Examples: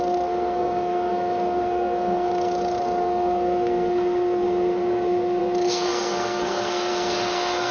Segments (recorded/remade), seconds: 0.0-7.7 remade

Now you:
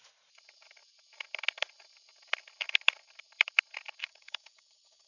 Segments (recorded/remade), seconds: 0.0-4.0 recorded; 4.0-5.1 remade